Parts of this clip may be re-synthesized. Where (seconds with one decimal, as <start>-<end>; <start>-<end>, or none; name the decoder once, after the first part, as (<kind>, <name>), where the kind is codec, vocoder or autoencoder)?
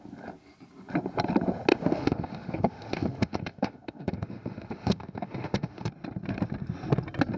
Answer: 1.7-5.9 (autoencoder, DAC-VAE)